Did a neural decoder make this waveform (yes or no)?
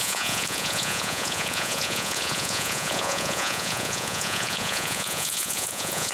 yes